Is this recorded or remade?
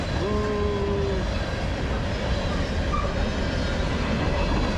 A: recorded